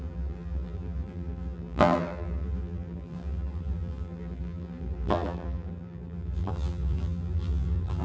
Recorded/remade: remade